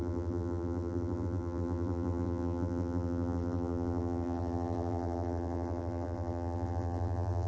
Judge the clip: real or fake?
fake